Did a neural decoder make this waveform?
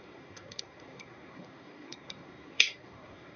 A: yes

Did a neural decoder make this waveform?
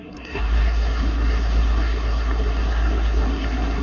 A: yes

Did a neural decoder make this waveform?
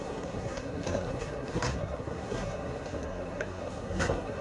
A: yes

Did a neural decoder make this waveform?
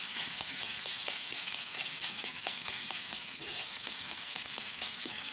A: yes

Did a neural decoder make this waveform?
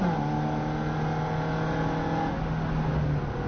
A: no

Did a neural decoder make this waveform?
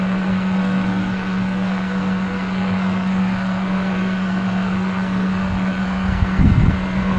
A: yes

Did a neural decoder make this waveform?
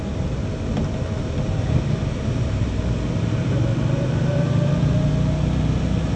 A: no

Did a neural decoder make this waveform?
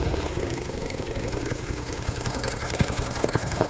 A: yes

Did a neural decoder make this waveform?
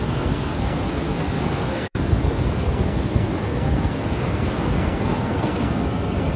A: yes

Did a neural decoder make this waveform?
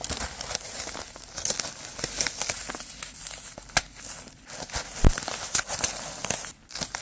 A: no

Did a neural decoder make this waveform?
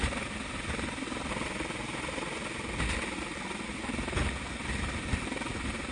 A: no